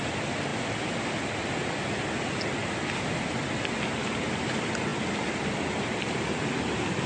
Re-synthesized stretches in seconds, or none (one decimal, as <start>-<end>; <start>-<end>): none